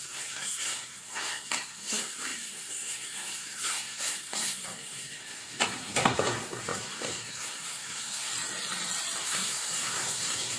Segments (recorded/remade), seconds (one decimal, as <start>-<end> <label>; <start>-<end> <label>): 0.0-8.3 remade; 8.3-9.2 recorded; 9.2-10.6 remade